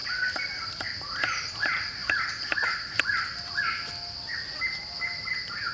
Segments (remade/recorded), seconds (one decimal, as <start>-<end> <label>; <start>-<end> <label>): 0.0-5.7 recorded